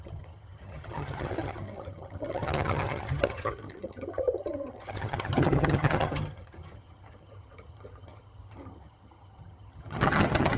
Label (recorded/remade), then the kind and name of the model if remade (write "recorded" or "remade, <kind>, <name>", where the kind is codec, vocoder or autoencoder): remade, vocoder, HiFi-GAN